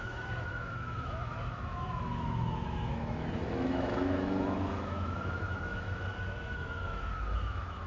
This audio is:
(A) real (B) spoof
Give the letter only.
B